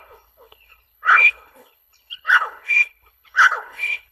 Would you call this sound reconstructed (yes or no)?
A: yes